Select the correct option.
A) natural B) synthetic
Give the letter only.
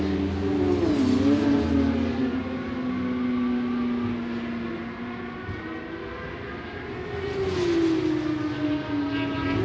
A